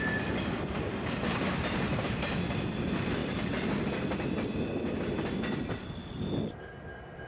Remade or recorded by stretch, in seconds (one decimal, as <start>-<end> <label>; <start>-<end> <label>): 0.0-7.3 recorded